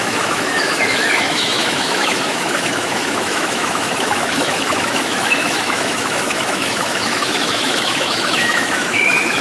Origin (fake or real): fake